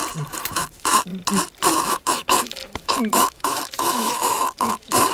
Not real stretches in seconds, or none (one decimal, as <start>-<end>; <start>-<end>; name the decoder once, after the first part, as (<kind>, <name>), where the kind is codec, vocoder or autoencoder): 0.5-1.1 (autoencoder, DAC-VAE); 1.7-5.1